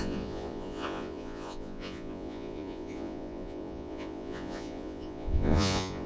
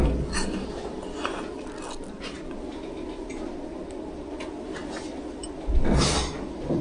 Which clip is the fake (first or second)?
first